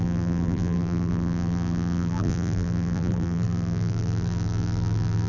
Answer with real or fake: fake